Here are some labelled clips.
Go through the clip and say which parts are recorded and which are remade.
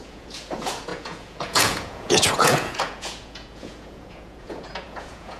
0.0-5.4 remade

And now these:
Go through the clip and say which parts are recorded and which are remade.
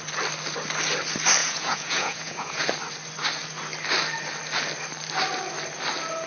0.0-1.4 recorded; 1.4-2.6 remade; 2.6-6.3 recorded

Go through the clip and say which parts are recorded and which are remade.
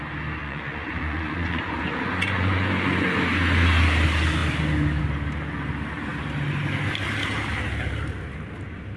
0.0-0.4 recorded; 0.4-3.2 remade; 3.2-9.0 recorded